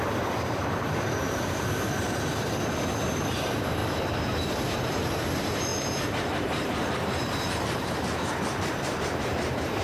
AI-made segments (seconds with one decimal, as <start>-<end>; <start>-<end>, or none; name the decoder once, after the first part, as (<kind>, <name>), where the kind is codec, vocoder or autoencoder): 0.0-9.8 (vocoder, BigVGAN v2)